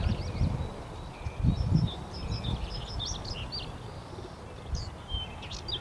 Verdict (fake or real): real